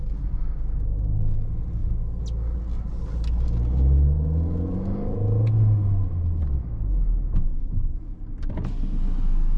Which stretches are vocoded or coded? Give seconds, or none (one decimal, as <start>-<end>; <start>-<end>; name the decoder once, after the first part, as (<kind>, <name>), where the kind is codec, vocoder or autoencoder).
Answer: none

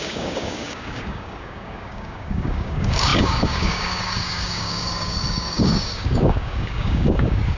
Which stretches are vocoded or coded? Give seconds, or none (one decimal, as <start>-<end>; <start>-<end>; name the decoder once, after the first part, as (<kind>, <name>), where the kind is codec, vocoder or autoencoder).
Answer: 0.0-7.6 (codec, DAC)